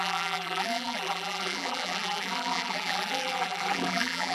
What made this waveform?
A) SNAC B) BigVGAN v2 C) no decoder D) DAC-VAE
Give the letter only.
B